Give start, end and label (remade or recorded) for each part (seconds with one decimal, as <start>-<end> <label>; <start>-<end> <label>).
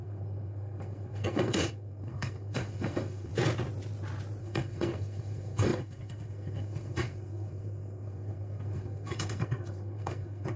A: 0.0-3.3 remade; 3.3-4.4 recorded; 4.4-10.6 remade